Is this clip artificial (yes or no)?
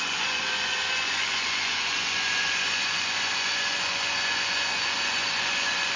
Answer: yes